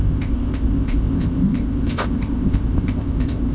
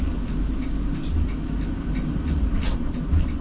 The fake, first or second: first